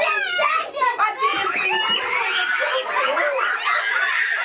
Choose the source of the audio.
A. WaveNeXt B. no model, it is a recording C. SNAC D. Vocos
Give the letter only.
B